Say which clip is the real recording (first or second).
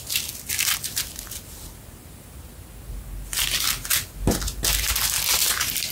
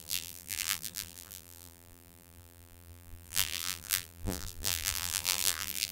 first